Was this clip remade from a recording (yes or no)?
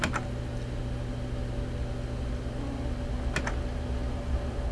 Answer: no